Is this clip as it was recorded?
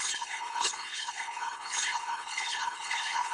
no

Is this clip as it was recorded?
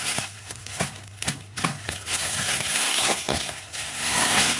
no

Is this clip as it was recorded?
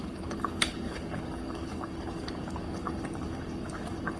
no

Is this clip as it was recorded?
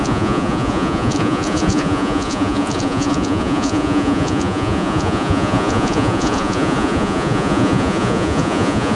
no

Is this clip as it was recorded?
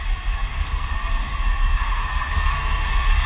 no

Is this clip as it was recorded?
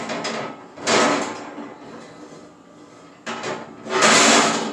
yes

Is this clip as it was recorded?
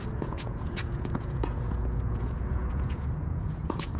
no